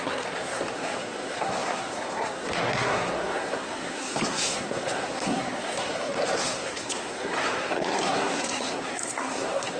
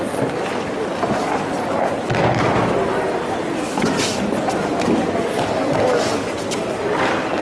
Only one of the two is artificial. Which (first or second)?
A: first